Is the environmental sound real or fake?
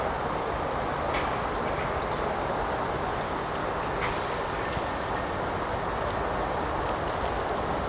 real